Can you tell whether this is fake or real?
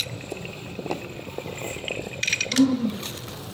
fake